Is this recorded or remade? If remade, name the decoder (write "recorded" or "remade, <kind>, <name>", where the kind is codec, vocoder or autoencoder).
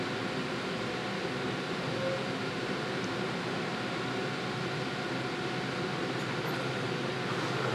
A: recorded